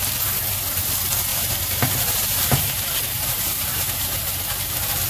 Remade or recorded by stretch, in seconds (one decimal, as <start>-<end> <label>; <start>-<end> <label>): 0.0-1.3 recorded; 1.3-4.4 remade; 4.4-5.1 recorded